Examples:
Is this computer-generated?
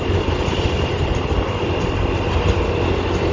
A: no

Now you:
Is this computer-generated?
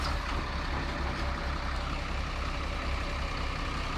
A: no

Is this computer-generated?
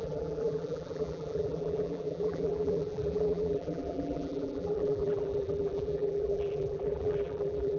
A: yes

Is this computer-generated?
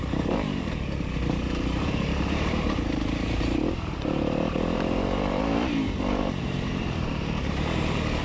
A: yes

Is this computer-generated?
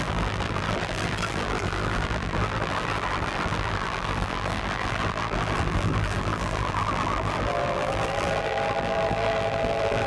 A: yes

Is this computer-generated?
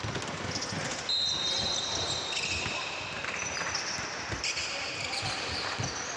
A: no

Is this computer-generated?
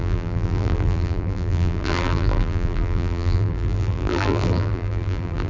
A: yes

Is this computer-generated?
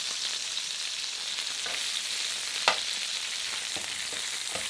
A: no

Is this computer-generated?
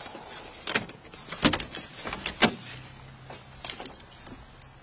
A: no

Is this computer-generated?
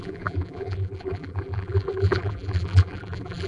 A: yes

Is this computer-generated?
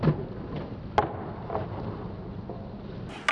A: no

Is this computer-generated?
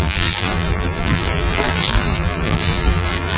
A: yes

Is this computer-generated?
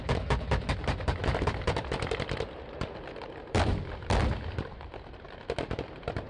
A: yes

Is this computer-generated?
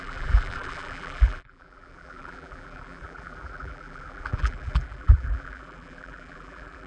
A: yes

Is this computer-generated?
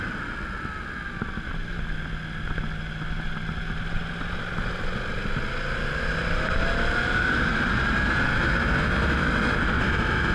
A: no